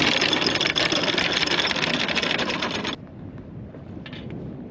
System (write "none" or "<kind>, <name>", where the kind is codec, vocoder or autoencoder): none